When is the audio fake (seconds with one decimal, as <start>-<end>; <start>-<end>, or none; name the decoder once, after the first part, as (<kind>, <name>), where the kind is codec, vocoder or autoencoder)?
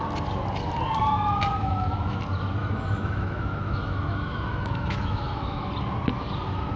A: 1.6-2.2 (autoencoder, DAC-VAE); 2.6-5.7